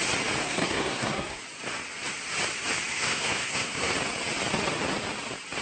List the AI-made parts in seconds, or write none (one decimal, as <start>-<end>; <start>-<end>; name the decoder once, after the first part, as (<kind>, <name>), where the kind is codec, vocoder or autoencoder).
0.4-1.4 (codec, SNAC); 2.9-3.9